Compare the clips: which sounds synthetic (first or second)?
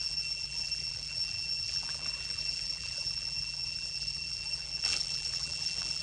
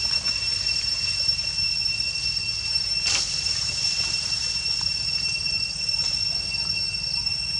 first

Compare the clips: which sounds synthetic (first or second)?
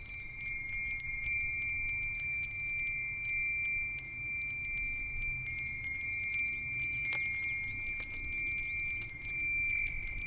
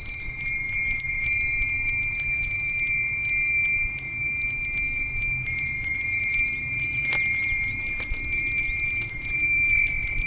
second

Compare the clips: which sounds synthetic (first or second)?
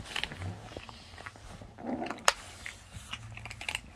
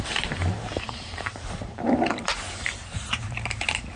second